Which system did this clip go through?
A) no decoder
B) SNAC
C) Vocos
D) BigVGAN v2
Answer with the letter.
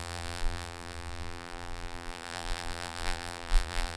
D